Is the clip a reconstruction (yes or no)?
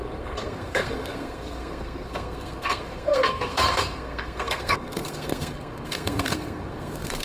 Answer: yes